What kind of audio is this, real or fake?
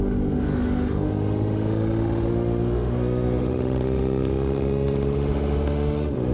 fake